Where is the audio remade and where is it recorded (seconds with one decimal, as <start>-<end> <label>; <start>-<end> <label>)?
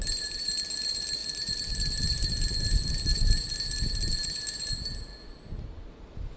0.0-6.4 recorded